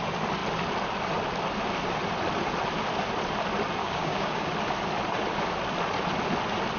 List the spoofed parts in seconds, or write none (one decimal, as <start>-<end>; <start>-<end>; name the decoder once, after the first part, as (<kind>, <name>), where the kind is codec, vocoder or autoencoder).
3.8-4.5 (codec, DAC)